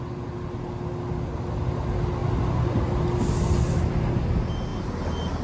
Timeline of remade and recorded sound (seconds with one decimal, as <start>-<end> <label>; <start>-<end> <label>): 0.0-5.4 recorded